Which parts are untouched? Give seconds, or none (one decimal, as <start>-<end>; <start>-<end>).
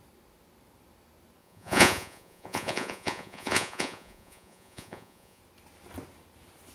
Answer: 0.0-1.4; 5.4-6.7